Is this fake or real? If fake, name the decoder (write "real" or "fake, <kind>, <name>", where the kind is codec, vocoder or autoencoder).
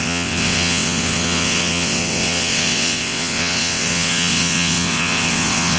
fake, vocoder, WaveNeXt